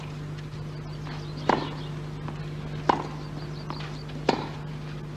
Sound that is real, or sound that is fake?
real